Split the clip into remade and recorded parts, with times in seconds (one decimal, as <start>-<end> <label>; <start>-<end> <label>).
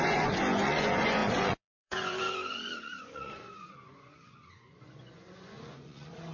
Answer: 0.0-6.3 remade